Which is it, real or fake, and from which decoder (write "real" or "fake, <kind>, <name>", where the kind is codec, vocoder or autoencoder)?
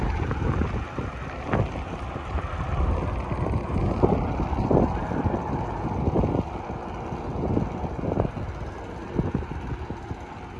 real